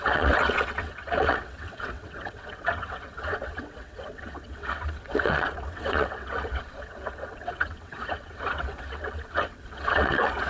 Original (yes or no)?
no